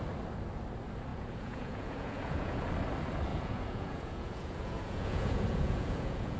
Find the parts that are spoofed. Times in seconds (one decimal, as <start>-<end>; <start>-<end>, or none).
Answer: 1.1-2.6; 3.3-6.4